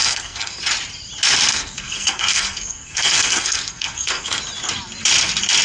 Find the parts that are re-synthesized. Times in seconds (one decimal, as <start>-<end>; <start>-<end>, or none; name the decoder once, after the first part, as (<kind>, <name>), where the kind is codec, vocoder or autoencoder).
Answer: 0.0-0.6 (codec, SNAC); 1.5-4.4